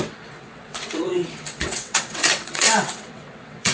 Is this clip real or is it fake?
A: fake